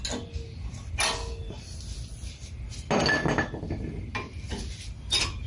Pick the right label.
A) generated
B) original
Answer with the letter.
B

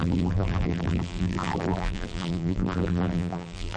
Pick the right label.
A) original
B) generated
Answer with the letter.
B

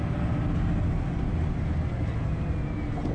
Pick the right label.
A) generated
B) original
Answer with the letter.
B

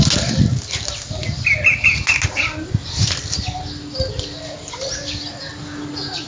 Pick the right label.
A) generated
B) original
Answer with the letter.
B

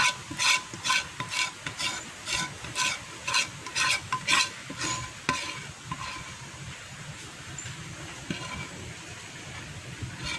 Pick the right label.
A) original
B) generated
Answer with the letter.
A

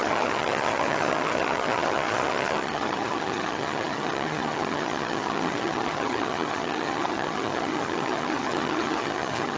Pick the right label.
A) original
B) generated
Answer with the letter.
B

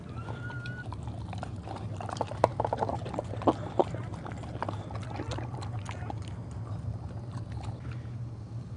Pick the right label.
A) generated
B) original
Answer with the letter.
B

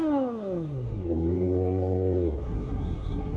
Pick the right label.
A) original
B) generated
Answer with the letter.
B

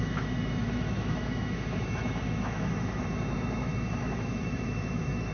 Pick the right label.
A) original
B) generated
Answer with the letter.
B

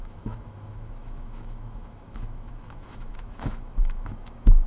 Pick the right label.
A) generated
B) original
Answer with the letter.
A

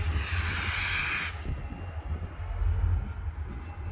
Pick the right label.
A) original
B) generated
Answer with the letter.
A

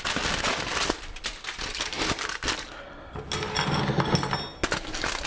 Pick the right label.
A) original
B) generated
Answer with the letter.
A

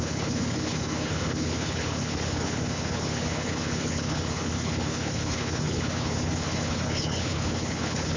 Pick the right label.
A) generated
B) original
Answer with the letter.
A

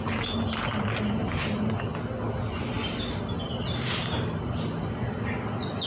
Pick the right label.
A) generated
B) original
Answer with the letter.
B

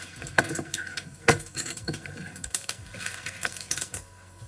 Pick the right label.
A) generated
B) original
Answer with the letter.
A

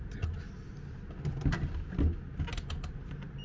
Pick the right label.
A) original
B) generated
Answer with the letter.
A